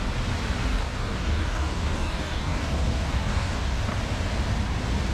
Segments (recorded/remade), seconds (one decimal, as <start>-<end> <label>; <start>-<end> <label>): 0.0-0.7 recorded; 0.7-3.8 remade; 3.8-5.1 recorded